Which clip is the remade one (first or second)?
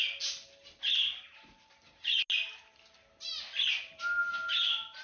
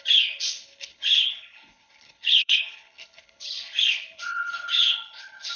second